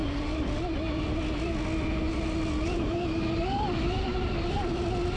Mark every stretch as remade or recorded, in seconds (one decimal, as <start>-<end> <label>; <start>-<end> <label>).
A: 0.0-5.2 recorded